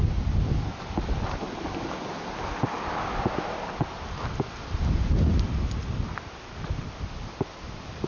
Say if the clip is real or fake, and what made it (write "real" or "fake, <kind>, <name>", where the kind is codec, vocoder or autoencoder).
real